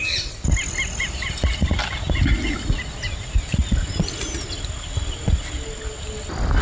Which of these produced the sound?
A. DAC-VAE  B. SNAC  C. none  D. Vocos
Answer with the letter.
C